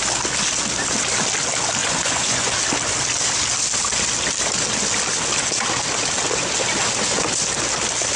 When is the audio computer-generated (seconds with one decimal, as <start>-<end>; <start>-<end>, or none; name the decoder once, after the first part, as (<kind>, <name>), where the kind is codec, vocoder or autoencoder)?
1.8-2.5 (vocoder, Vocos)

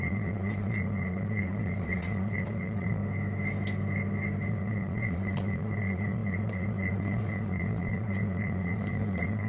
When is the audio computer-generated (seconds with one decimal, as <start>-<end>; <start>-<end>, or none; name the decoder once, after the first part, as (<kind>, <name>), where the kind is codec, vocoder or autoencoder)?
0.0-3.0 (vocoder, Vocos); 4.5-9.5

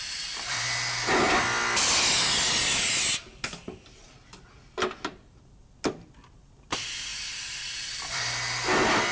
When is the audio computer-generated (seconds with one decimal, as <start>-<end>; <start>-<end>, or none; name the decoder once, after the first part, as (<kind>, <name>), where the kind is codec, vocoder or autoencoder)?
none

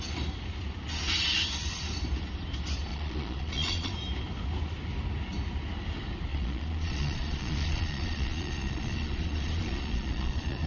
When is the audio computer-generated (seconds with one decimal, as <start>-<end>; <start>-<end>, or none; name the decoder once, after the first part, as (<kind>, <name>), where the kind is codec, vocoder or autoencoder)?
2.9-3.9 (vocoder, Vocos); 6.3-10.7

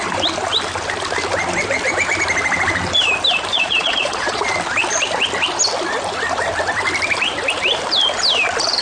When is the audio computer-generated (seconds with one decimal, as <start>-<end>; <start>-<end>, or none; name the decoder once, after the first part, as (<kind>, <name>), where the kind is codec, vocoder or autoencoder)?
3.5-4.4 (vocoder, Vocos)